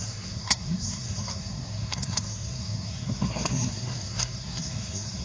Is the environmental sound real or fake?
fake